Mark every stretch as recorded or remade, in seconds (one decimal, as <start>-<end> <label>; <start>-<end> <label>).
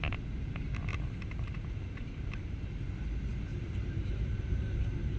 0.0-0.9 recorded; 0.9-2.9 remade; 2.9-3.5 recorded; 3.5-5.2 remade